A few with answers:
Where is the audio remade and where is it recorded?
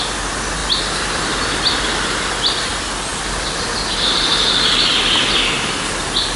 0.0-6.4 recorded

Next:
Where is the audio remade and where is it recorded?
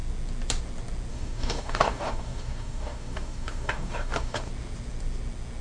0.0-1.1 recorded; 1.1-4.5 remade; 4.5-5.6 recorded